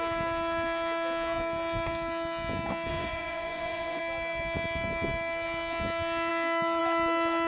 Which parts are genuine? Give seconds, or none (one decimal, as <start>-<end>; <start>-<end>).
0.0-2.9; 4.0-7.5